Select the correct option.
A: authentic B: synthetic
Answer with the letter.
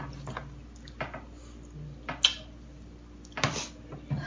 A